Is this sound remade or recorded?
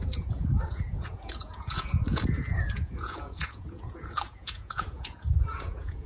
remade